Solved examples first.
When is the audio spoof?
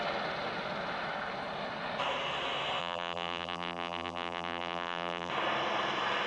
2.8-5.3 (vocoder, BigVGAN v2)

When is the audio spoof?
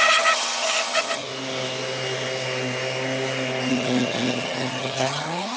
0.0-1.3 (vocoder, HiFi-GAN); 3.7-5.6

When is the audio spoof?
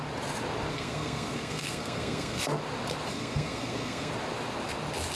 0.7-2.4 (codec, SNAC); 3.1-4.1